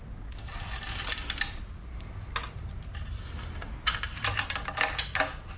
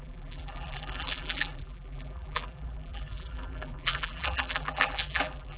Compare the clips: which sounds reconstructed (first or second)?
second